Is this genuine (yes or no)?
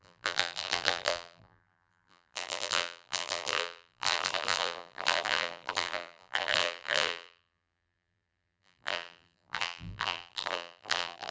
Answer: no